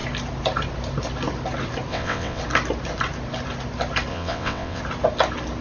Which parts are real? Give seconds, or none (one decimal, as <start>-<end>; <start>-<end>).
0.0-1.9; 2.4-4.1; 4.8-5.6